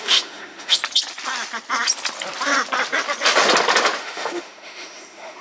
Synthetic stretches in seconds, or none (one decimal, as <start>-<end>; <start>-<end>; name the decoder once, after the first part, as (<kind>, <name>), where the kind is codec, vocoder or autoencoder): 0.0-0.8 (autoencoder, DAC-VAE); 4.0-5.4